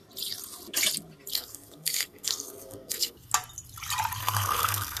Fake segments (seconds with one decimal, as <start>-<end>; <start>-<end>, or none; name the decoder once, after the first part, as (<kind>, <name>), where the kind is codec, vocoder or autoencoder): 1.3-3.3 (codec, SNAC); 4.2-5.0